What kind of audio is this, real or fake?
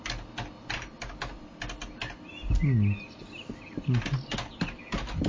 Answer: real